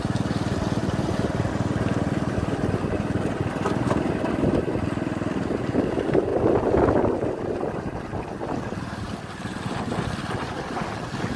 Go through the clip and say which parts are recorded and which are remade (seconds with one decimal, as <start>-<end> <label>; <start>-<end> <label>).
0.0-11.4 recorded